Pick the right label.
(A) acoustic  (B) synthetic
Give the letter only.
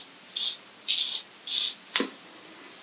A